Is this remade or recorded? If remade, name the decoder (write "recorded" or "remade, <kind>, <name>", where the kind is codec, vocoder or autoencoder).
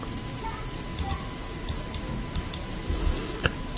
recorded